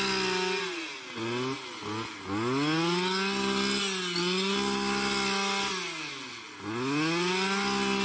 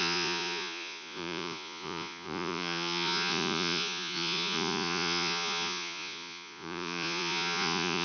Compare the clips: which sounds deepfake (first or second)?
second